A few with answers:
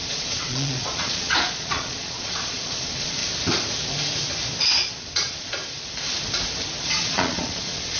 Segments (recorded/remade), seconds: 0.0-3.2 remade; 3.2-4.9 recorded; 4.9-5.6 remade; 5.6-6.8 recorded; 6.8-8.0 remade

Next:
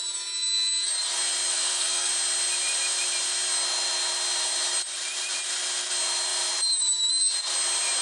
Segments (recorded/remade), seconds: 0.0-1.5 recorded; 1.5-2.1 remade; 2.1-8.0 recorded